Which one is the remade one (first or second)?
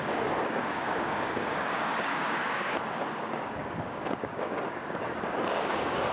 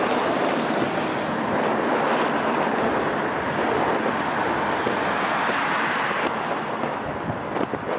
first